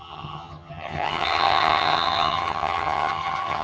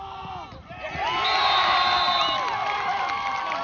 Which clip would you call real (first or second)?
second